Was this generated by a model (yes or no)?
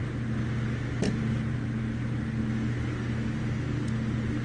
no